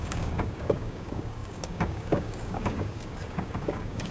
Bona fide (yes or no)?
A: no